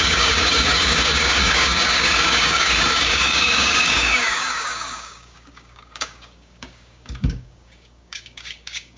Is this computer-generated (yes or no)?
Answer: yes